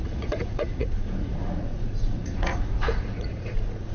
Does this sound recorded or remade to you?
remade